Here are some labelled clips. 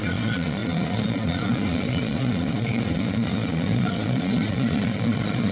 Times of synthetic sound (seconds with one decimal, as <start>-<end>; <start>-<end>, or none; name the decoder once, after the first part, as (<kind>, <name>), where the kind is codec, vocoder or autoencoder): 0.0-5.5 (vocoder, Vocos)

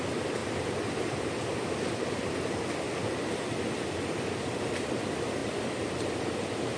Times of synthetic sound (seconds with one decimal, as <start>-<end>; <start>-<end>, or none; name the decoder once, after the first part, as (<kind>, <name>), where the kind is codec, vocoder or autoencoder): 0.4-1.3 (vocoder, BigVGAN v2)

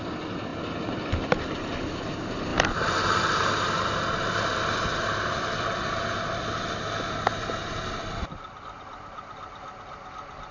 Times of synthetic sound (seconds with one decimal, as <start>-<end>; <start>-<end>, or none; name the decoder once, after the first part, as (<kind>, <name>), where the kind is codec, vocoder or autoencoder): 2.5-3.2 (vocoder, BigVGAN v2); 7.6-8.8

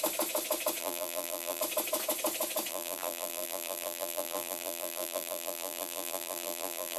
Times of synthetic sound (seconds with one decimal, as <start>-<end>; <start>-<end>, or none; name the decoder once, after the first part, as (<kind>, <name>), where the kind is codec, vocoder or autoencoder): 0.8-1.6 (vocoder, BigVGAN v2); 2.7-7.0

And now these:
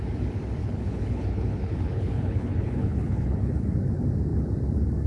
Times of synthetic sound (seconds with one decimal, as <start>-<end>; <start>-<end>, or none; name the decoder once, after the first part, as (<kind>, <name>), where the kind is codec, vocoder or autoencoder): 0.6-3.7 (codec, HILCodec)

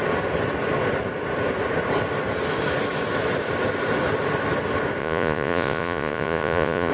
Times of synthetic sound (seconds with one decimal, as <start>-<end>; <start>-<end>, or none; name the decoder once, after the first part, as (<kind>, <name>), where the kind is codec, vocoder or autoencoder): 5.0-6.9 (vocoder, Vocos)

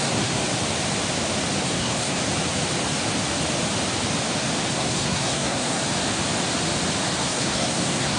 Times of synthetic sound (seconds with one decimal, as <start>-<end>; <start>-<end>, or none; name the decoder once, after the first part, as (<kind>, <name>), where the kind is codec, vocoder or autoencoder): 0.0-0.4 (codec, SNAC); 1.6-2.2; 4.7-5.8; 7.2-8.2